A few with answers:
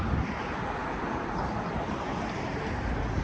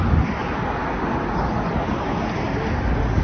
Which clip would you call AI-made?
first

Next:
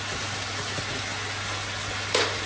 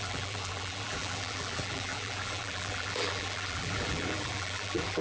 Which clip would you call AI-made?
second